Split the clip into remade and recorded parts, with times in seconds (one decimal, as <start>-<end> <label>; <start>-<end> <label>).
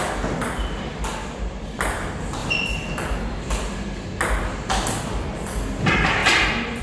0.0-2.4 recorded; 2.4-4.2 remade; 4.2-6.8 recorded